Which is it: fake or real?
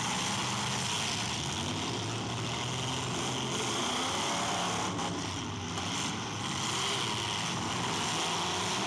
real